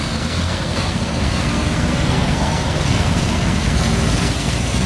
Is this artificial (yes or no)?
yes